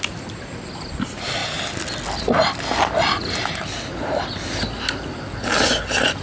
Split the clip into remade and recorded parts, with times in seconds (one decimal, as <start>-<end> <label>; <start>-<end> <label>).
0.0-6.2 recorded